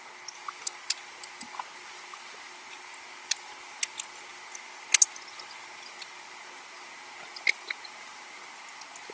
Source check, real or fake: real